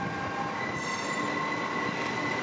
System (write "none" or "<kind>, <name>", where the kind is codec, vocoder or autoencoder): none